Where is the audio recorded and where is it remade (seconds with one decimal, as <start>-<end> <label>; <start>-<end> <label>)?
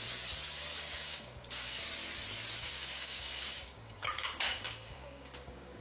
0.0-0.7 recorded; 0.7-1.8 remade; 1.8-2.6 recorded; 2.6-5.8 remade